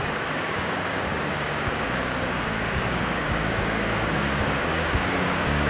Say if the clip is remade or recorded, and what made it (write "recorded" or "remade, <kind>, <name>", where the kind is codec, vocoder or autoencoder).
remade, codec, DAC